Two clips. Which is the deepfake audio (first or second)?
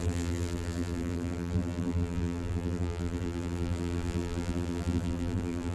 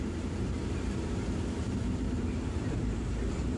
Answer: first